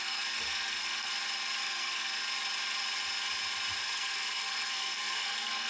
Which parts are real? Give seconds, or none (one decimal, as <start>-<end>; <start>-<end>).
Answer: 1.1-1.6; 2.2-3.8